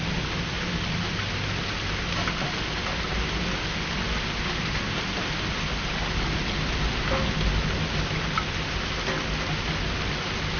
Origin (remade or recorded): recorded